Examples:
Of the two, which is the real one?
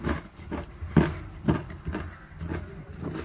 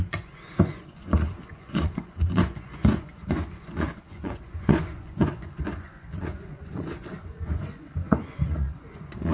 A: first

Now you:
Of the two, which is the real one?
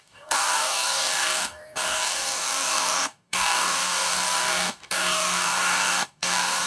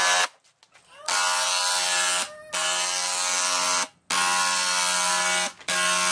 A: second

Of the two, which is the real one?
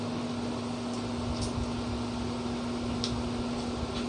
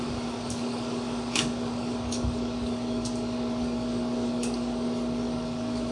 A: first